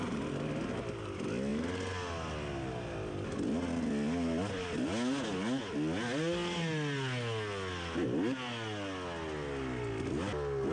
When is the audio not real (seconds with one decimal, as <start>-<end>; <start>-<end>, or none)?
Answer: none